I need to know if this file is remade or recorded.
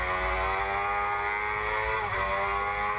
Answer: recorded